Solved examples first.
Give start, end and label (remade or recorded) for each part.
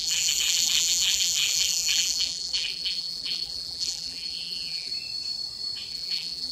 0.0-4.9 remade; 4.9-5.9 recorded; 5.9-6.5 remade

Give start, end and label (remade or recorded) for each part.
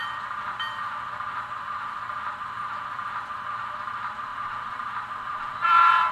0.0-4.3 recorded; 4.3-6.1 remade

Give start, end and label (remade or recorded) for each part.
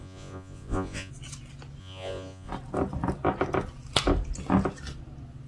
0.0-1.1 remade; 1.1-1.8 recorded; 1.8-2.5 remade; 2.5-5.5 recorded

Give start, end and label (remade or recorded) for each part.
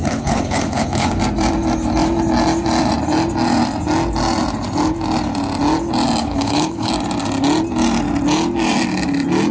0.0-1.2 remade; 1.2-6.2 recorded; 6.2-6.9 remade; 6.9-9.5 recorded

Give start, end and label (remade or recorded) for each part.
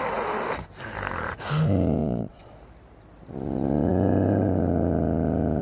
0.0-2.0 recorded; 2.0-2.5 remade; 2.5-5.6 recorded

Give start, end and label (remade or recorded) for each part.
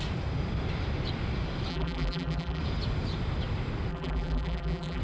0.0-1.7 recorded; 1.7-2.6 remade; 2.6-3.9 recorded; 3.9-5.0 remade